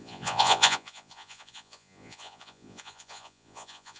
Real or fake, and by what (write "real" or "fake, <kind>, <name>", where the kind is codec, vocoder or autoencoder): fake, vocoder, Vocos